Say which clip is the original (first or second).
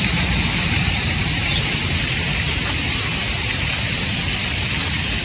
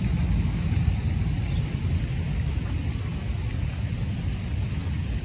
second